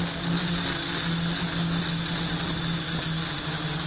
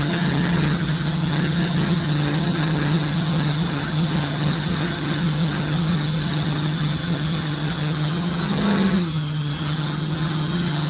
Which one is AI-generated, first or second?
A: second